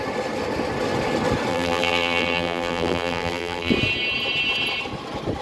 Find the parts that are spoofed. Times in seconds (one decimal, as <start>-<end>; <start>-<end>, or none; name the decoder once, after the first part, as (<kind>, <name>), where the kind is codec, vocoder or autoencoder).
1.5-3.7 (vocoder, BigVGAN v2)